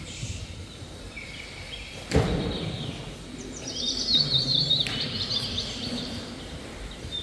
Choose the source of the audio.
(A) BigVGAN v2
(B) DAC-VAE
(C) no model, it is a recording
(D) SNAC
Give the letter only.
A